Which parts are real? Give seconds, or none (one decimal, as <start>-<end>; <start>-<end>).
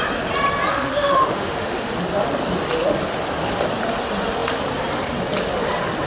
0.0-0.7; 1.9-6.1